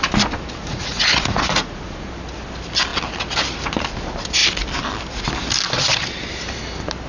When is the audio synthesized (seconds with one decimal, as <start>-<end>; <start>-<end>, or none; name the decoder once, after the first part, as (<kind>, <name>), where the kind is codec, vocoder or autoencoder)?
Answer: 0.6-2.1 (vocoder, Vocos)